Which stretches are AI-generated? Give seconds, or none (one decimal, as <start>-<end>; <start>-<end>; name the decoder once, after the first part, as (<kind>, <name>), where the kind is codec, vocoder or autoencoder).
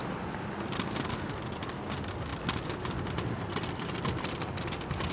none